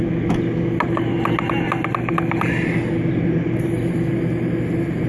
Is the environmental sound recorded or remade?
recorded